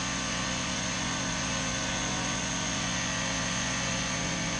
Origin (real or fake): fake